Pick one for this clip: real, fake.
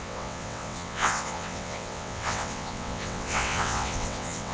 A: fake